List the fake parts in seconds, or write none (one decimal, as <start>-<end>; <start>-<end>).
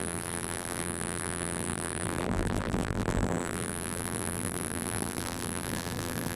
0.0-6.3